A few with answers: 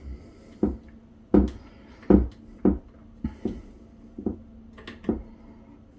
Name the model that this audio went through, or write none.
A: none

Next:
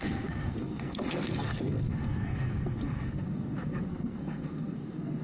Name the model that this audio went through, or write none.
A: codec, SNAC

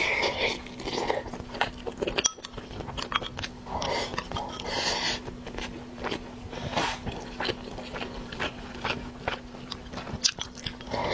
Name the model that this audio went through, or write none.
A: none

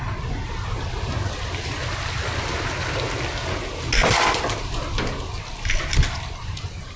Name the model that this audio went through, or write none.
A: none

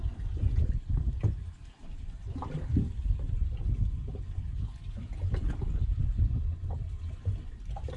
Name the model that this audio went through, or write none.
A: none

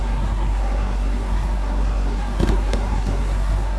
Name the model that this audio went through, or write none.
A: codec, SNAC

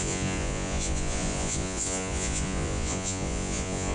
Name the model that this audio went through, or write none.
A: vocoder, Vocos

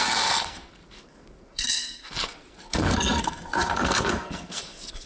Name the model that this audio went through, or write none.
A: codec, SNAC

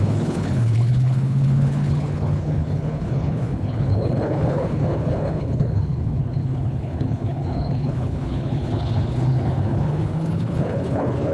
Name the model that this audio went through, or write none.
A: codec, HILCodec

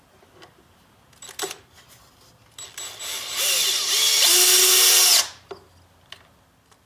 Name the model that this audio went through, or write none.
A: none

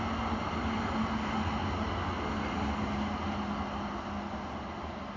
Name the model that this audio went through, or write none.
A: none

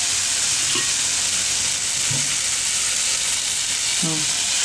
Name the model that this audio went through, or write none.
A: none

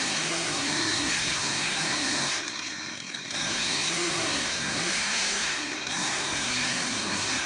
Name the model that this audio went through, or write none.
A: codec, SNAC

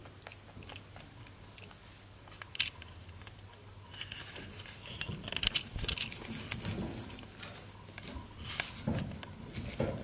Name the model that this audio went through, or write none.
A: none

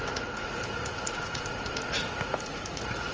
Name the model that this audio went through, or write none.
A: vocoder, Vocos